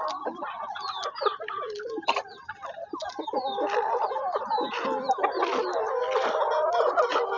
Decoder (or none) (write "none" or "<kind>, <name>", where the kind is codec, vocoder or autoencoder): none